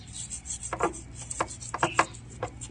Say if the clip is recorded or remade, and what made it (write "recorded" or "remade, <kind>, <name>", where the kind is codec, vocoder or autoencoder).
recorded